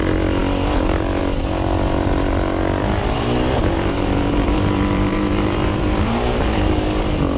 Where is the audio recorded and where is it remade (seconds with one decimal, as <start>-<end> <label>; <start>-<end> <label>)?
0.0-2.8 recorded; 2.8-6.7 remade; 6.7-7.4 recorded